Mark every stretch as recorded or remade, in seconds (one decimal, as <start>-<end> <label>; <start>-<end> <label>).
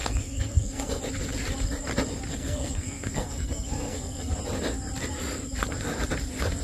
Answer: 0.0-1.0 remade; 1.0-2.3 recorded; 2.3-4.3 remade; 4.3-6.6 recorded